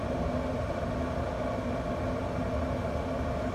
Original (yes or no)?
yes